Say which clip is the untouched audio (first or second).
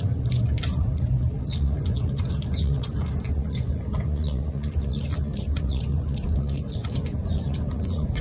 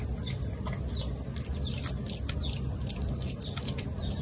second